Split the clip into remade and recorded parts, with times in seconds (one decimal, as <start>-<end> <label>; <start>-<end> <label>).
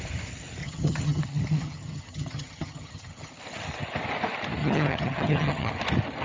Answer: 0.0-0.6 recorded; 0.6-1.2 remade; 1.2-1.6 recorded; 1.6-3.3 remade; 3.3-4.6 recorded; 4.6-5.7 remade; 5.7-6.2 recorded